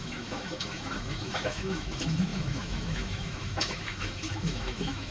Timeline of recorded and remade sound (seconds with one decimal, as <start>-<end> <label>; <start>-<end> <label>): 0.0-5.1 remade